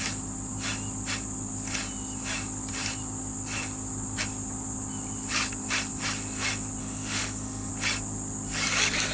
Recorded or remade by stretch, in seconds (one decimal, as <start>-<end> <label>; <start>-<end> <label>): 0.0-6.8 recorded; 6.8-7.7 remade; 7.7-9.1 recorded